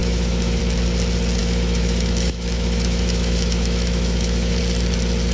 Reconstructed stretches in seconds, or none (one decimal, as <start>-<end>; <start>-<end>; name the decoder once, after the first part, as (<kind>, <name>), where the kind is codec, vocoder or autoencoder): 0.0-0.6 (autoencoder, DAC-VAE); 1.4-4.6